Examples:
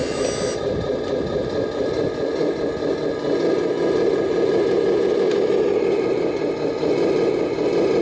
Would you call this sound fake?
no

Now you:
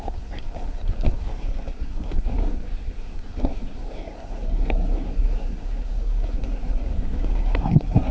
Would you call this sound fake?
yes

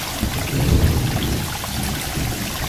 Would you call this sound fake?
no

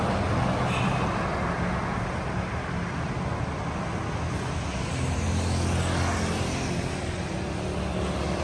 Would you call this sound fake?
no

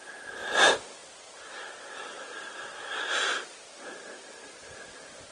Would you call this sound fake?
no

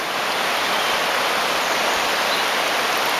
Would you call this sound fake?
no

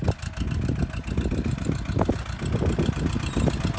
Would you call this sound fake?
no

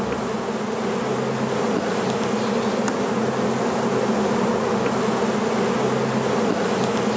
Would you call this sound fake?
no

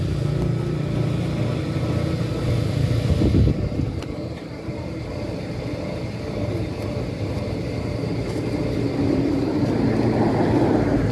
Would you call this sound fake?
no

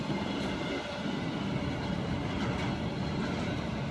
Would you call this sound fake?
no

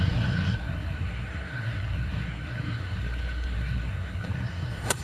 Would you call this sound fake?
yes